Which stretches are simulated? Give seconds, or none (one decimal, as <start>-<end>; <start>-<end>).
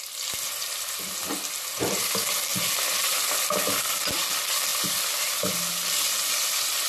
none